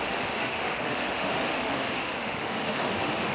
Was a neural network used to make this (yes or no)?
yes